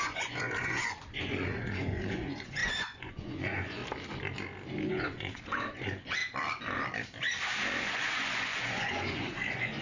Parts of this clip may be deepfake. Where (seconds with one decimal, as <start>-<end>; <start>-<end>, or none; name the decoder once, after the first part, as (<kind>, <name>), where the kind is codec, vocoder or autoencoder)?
0.0-3.8 (vocoder, Vocos); 4.9-6.2; 7.8-9.8